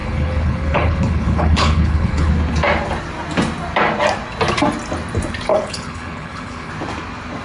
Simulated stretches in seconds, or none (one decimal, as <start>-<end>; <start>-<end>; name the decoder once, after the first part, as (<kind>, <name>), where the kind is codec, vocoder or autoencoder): 0.0-2.3 (codec, HILCodec); 5.5-6.7